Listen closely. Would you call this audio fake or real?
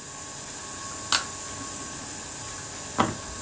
real